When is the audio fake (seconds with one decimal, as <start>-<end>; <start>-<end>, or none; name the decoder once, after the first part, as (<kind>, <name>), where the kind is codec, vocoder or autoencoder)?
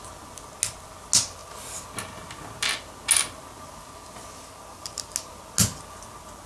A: none